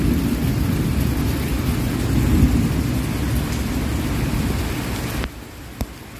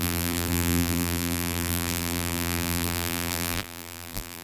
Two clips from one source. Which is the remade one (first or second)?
second